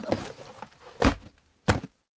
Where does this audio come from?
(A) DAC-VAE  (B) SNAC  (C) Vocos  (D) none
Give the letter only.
D